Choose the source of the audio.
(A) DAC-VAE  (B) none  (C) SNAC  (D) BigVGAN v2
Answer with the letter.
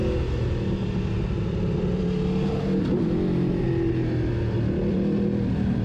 B